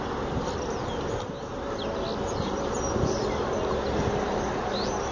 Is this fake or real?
real